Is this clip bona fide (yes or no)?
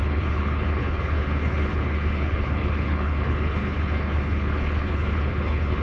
no